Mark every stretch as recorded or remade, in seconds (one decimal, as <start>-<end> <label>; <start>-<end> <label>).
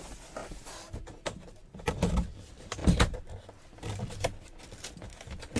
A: 0.0-0.4 remade; 0.4-1.0 recorded; 1.0-5.6 remade